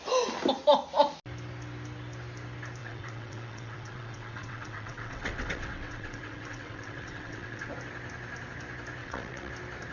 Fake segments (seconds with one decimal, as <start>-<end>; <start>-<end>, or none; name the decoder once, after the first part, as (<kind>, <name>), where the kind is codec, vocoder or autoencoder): 2.8-7.7 (vocoder, WaveNeXt); 9.0-9.5